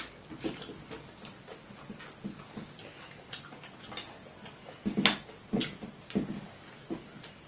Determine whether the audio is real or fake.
real